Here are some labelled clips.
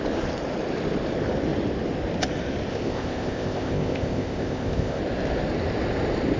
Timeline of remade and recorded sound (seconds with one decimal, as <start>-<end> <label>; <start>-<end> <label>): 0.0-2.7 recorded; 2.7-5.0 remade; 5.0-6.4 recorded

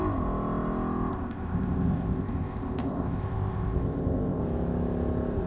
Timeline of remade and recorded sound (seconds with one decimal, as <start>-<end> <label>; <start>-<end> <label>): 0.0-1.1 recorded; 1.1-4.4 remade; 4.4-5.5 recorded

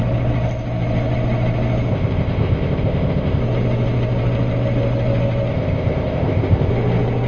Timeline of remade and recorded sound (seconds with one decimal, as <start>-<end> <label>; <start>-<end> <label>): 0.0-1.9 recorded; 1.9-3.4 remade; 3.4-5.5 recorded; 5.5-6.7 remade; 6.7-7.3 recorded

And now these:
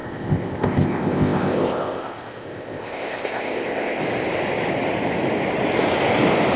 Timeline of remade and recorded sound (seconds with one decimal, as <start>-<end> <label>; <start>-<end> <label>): 0.0-4.0 remade; 4.0-6.6 recorded